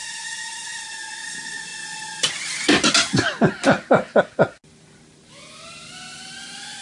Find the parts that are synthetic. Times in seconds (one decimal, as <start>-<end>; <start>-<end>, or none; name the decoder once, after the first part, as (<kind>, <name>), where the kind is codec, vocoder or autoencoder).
0.0-1.1 (vocoder, BigVGAN v2)